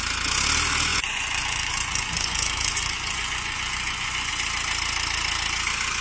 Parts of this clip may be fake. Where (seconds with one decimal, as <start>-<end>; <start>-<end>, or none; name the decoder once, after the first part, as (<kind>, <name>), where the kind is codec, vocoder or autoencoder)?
0.9-4.3 (vocoder, Vocos)